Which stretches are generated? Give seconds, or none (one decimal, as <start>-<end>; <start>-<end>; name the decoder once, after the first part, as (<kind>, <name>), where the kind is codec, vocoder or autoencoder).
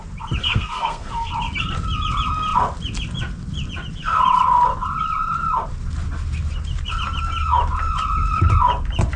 0.4-1.3 (codec, SNAC)